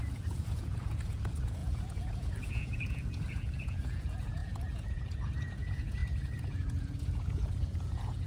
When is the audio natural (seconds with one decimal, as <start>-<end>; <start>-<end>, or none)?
none

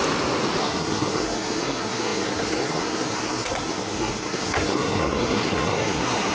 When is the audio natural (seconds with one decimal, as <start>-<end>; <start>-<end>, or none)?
0.0-0.6

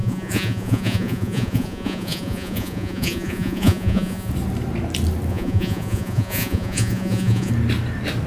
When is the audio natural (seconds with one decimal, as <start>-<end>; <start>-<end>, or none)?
4.3-5.3; 7.5-8.3

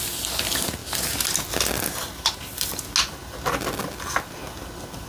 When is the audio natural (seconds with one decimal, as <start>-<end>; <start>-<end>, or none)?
0.0-5.1